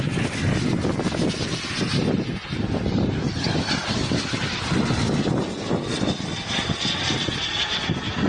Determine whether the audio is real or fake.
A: real